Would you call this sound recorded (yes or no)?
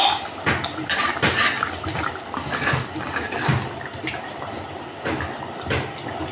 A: yes